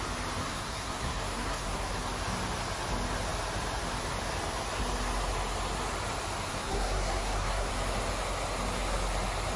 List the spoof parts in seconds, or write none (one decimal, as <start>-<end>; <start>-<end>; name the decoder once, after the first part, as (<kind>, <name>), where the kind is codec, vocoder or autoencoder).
0.4-1.9 (codec, SNAC); 6.5-7.7